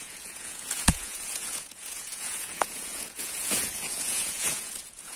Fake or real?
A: fake